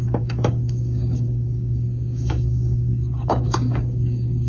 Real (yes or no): no